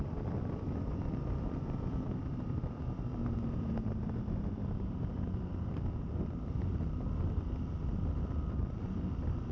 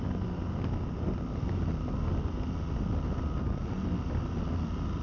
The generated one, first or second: first